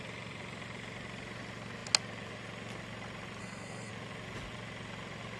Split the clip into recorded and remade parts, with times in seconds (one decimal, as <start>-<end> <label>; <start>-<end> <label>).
0.0-3.4 recorded; 3.4-3.9 remade; 3.9-5.4 recorded